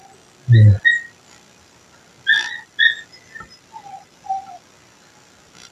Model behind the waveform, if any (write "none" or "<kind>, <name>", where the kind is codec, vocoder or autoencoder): none